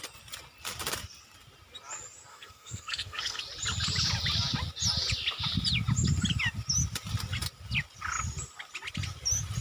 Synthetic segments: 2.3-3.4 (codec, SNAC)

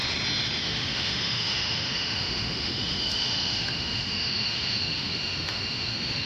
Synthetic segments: 0.6-6.3 (autoencoder, DAC-VAE)

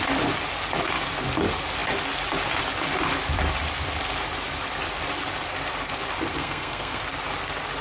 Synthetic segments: 6.4-7.0 (codec, SNAC)

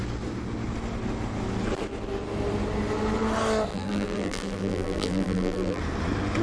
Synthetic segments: 3.7-5.8 (vocoder, BigVGAN v2)